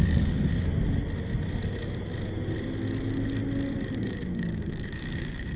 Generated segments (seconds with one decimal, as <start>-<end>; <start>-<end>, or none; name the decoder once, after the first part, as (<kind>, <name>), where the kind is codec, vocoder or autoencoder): 0.0-0.5 (codec, DAC); 3.9-5.6